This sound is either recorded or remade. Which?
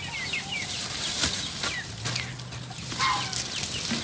recorded